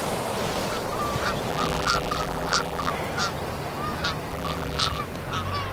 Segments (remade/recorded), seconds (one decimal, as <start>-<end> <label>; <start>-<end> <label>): 0.0-1.5 recorded; 1.5-2.9 remade; 2.9-4.3 recorded; 4.3-5.0 remade; 5.0-5.7 recorded